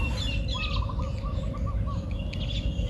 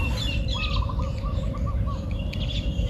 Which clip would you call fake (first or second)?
second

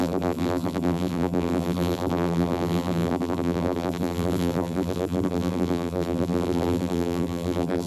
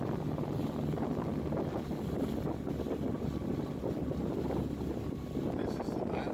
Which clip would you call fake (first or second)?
first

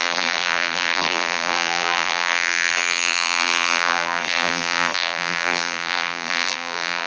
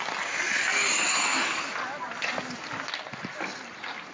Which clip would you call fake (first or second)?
first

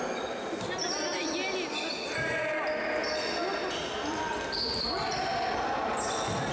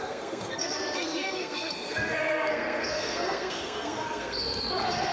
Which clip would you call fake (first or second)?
second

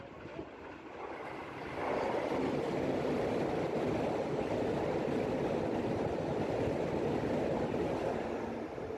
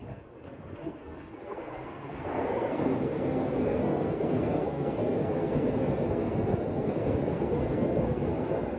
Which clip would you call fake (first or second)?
second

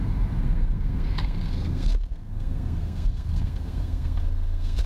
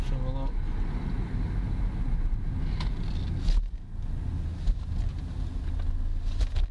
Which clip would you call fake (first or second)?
first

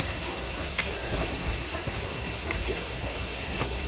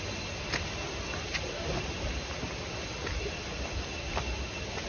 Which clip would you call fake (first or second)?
first